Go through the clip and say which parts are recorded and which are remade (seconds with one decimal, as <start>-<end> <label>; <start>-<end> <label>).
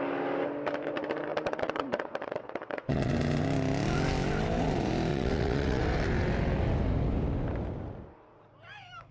0.0-1.3 recorded; 1.3-3.1 remade; 3.1-5.1 recorded; 5.1-5.8 remade; 5.8-9.1 recorded